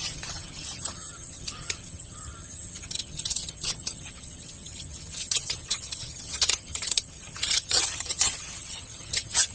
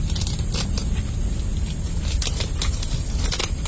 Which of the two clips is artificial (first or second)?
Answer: first